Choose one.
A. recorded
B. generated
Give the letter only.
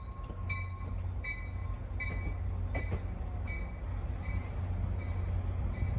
A